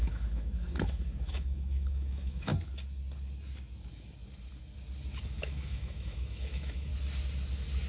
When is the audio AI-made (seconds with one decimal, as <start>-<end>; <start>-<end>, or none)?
0.0-2.5; 5.4-6.9